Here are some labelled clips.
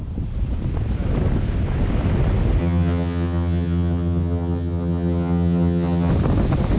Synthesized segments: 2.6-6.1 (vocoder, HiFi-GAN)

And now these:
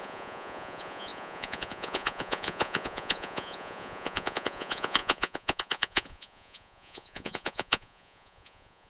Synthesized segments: 0.0-8.9 (vocoder, Vocos)

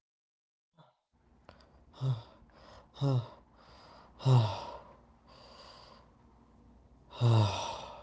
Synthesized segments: none

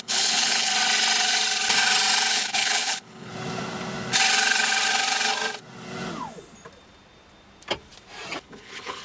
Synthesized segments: 0.0-0.7 (codec, HILCodec); 2.3-3.3; 8.4-9.0

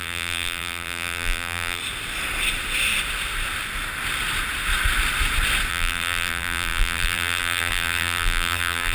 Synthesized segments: 0.0-1.8 (vocoder, BigVGAN v2); 5.7-8.9